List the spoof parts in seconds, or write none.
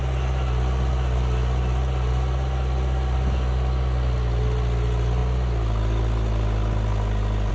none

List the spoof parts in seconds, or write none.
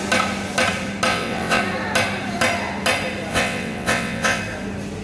1.1-1.6 (vocoder, WaveNeXt); 3.3-4.4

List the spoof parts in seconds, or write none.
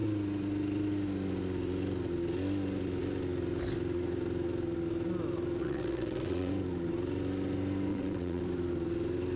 5.6-6.5 (vocoder, WaveNeXt); 7.9-8.4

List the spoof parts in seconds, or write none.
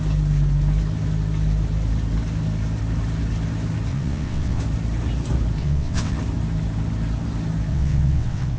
3.9-4.6 (vocoder, WaveNeXt); 5.6-6.2; 7.7-8.6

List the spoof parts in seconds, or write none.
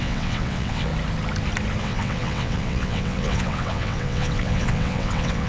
0.0-0.9 (vocoder, WaveNeXt); 1.8-5.5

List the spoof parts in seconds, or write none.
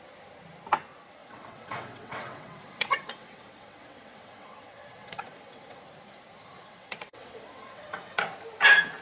1.2-5.8 (vocoder, WaveNeXt); 6.6-8.2